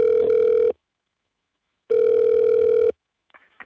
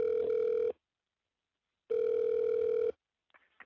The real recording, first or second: second